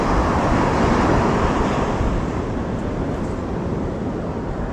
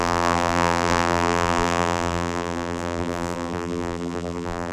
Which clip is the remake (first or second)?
second